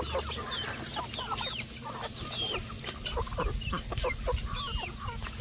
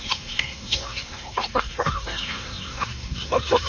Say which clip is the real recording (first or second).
first